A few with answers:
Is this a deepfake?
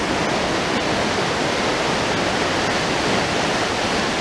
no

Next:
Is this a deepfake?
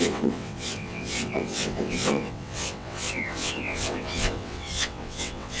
yes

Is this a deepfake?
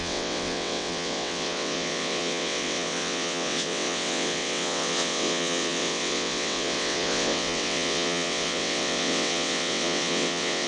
yes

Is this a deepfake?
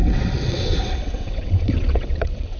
yes